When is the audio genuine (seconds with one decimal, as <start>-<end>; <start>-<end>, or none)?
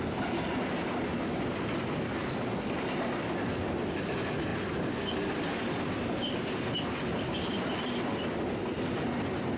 0.0-9.6